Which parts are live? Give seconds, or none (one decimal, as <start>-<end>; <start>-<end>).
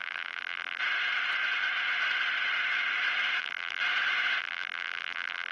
0.8-3.4; 3.8-4.4